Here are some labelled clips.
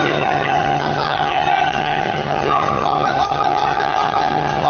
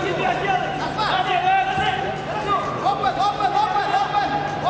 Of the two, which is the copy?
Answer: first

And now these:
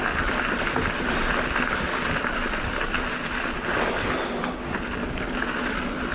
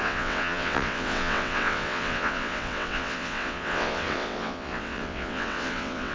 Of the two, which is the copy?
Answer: second